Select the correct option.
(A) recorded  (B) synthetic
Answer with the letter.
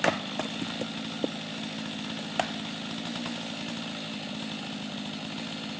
A